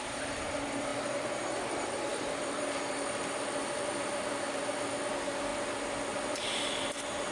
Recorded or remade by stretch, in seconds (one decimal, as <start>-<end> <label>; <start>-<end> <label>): 0.0-0.9 remade; 0.9-1.6 recorded; 1.6-5.5 remade; 5.5-6.3 recorded; 6.3-7.3 remade